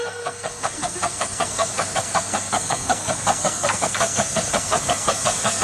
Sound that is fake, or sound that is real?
fake